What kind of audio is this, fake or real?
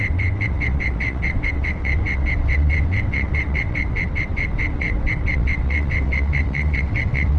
fake